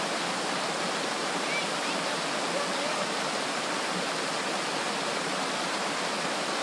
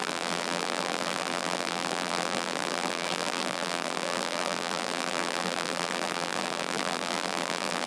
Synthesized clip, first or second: second